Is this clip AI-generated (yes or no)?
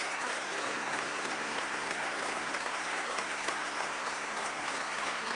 yes